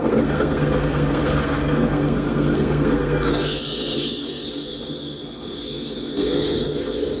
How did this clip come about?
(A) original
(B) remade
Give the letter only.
B